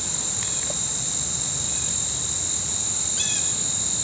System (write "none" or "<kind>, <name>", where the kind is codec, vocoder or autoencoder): none